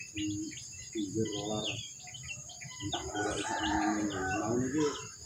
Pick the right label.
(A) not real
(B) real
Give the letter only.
B